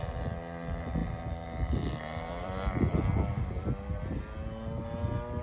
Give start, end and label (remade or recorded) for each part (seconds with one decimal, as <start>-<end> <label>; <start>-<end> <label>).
0.0-1.0 recorded; 1.0-4.2 remade; 4.2-5.4 recorded